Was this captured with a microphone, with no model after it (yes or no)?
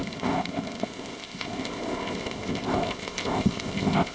no